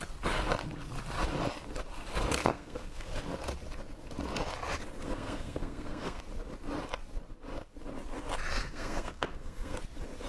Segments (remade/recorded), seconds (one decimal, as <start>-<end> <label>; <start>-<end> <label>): 0.0-2.4 recorded; 2.4-3.1 remade; 3.1-5.0 recorded; 5.0-6.2 remade; 6.2-8.6 recorded; 8.6-9.8 remade; 9.8-10.3 recorded